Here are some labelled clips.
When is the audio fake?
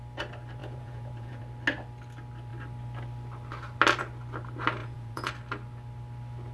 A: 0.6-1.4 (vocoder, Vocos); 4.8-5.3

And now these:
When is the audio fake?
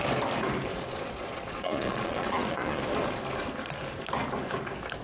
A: 0.7-2.8 (vocoder, Vocos)